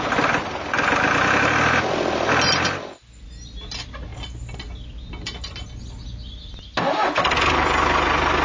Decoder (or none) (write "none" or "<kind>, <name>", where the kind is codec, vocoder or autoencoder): none